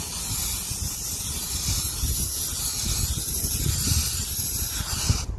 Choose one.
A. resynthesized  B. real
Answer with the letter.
B